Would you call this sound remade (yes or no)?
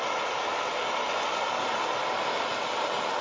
no